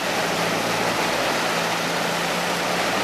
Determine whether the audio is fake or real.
real